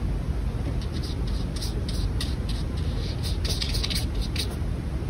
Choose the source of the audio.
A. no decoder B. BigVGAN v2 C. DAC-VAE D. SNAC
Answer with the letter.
A